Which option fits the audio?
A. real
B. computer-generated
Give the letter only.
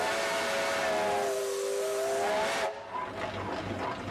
A